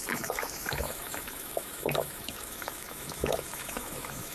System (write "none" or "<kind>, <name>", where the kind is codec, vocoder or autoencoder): autoencoder, DAC-VAE